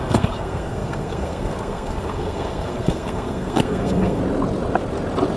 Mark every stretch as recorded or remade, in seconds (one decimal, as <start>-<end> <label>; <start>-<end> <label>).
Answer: 0.0-4.2 remade; 4.2-5.4 recorded